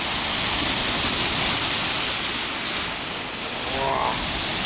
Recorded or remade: recorded